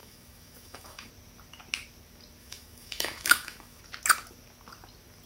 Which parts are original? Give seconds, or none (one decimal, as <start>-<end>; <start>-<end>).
1.1-2.4; 3.8-5.3